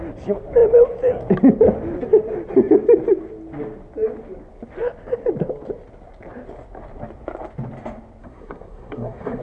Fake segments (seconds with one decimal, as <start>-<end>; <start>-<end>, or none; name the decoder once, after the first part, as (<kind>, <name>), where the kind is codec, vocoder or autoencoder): 8.2-9.4 (codec, SNAC)